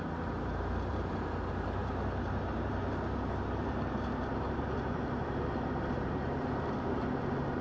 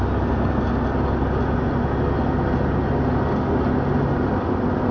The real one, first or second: second